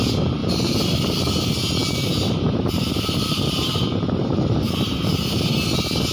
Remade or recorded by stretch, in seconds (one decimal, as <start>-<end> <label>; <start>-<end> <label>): 0.0-0.4 recorded; 0.4-1.3 remade; 1.3-1.8 recorded; 1.8-5.5 remade; 5.5-6.1 recorded